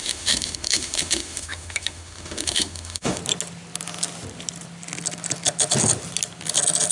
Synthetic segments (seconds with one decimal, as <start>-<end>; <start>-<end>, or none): 0.0-3.2